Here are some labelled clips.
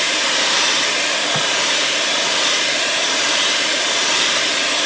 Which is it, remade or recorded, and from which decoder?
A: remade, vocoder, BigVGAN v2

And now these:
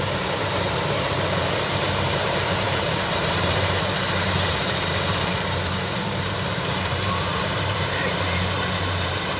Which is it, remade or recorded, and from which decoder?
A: remade, vocoder, BigVGAN v2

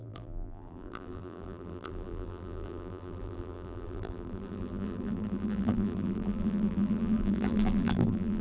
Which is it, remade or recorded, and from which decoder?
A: remade, vocoder, BigVGAN v2